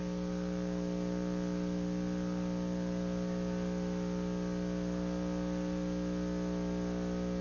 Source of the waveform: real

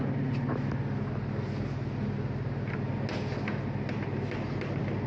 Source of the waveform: real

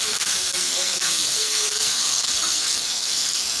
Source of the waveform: fake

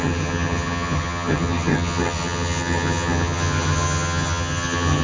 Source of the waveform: fake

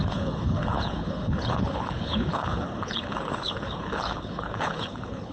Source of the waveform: fake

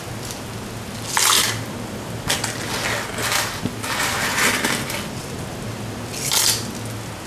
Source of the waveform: real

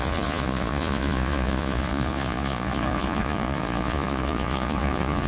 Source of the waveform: fake